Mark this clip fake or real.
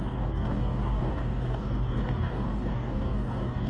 fake